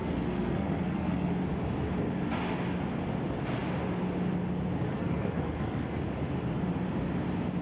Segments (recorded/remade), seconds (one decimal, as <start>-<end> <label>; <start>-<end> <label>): 0.0-1.3 remade; 1.3-4.9 recorded; 4.9-6.0 remade; 6.0-7.6 recorded